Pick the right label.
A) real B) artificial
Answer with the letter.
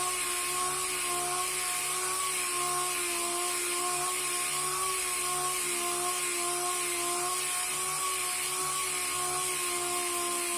A